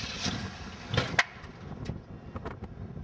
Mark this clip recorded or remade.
recorded